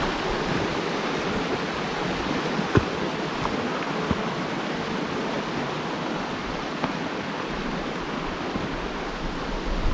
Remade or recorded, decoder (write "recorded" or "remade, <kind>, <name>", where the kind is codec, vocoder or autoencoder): recorded